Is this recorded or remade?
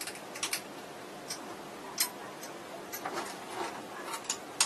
recorded